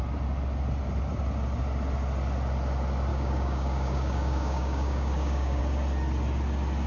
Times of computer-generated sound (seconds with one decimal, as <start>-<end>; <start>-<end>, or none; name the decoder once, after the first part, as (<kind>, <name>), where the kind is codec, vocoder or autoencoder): 3.1-5.6 (codec, DAC)